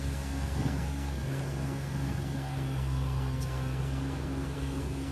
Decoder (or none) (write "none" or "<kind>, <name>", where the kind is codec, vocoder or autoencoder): codec, SNAC